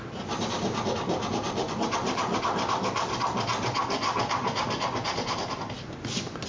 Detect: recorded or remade recorded